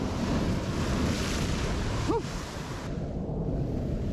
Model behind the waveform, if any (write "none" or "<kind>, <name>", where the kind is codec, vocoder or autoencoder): none